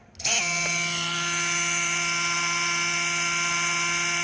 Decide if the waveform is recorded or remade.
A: recorded